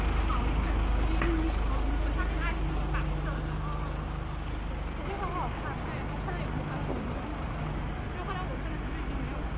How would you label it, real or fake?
real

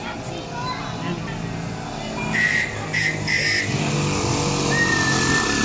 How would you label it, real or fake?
real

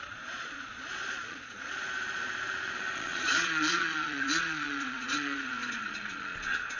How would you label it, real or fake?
fake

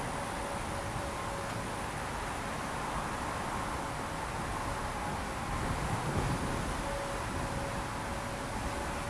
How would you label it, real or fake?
real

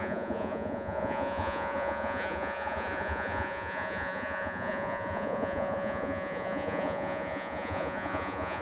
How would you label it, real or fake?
fake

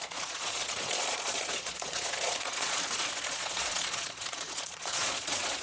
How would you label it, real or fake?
fake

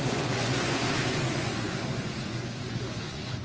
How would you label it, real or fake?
fake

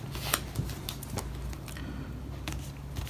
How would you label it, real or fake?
real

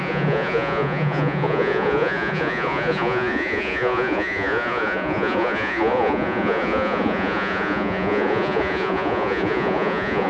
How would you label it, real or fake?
fake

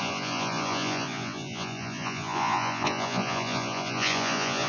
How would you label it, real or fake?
fake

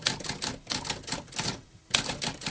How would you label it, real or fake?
real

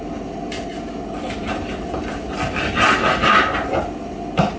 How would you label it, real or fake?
real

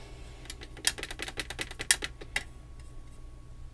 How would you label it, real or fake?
real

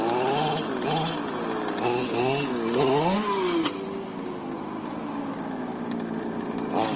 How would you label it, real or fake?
real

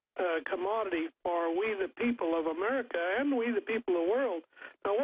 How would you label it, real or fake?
real